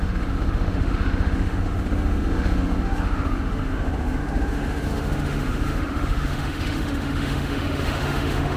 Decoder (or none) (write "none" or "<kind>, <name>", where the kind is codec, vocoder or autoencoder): autoencoder, DAC-VAE